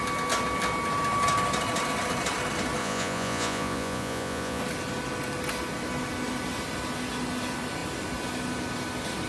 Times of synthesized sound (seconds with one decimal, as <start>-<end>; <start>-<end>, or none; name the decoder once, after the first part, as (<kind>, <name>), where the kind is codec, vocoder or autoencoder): 2.8-4.6 (vocoder, Vocos)